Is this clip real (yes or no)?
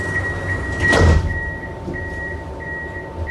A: yes